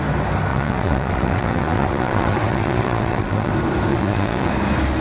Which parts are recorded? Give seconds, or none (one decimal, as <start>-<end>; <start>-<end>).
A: 0.0-0.5; 3.5-3.9; 4.5-5.0

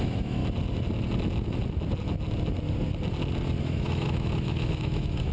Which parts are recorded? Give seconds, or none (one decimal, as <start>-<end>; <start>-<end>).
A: 0.4-3.6

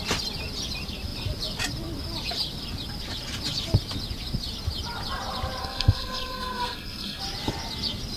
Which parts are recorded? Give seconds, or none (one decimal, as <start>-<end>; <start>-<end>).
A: 0.0-5.6; 7.2-8.2